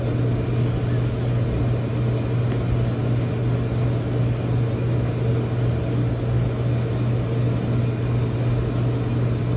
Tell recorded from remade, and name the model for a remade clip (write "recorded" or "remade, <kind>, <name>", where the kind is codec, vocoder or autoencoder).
recorded